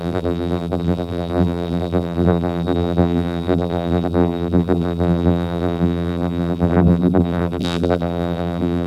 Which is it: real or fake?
fake